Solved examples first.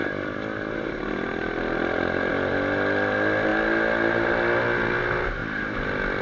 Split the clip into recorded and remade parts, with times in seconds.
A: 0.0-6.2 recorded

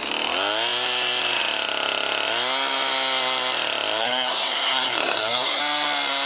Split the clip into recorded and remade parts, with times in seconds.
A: 0.0-4.0 recorded; 4.0-5.6 remade; 5.6-6.3 recorded

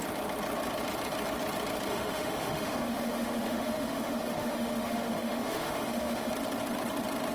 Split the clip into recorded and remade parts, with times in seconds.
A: 0.0-1.9 recorded; 1.9-6.3 remade; 6.3-7.3 recorded

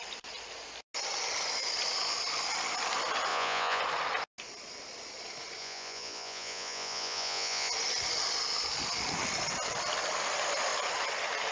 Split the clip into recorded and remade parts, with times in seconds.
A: 0.0-3.3 recorded; 3.3-3.8 remade; 3.8-5.6 recorded; 5.6-7.7 remade; 7.7-11.5 recorded

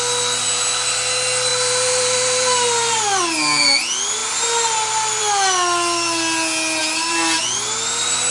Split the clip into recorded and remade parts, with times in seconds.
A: 0.0-1.5 recorded; 1.5-3.2 remade; 3.2-6.8 recorded; 6.8-7.4 remade; 7.4-8.3 recorded

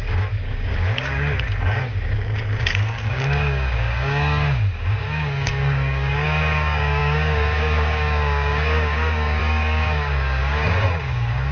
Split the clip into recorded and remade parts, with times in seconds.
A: 0.0-11.5 remade

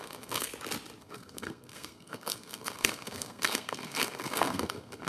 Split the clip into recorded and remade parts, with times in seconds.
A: 0.0-0.5 remade; 0.5-1.0 recorded; 1.0-5.1 remade

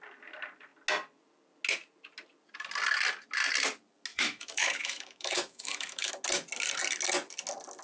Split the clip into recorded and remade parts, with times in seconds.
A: 0.0-4.1 recorded; 4.1-6.1 remade; 6.1-7.8 recorded